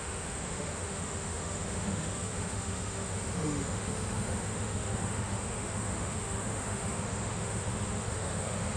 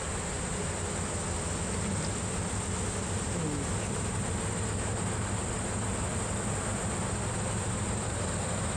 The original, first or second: second